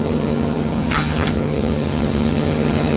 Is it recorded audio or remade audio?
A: remade